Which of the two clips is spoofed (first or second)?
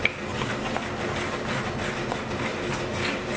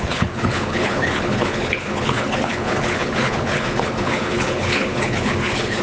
second